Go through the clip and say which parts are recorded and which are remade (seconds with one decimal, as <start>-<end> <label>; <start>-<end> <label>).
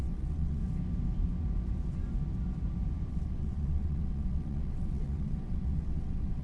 0.0-0.6 remade; 0.6-3.1 recorded; 3.1-6.4 remade